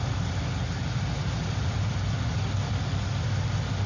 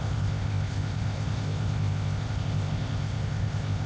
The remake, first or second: second